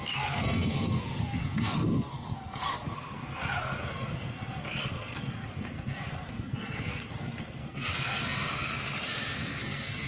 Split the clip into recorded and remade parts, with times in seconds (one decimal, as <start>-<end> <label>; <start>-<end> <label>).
0.0-10.1 remade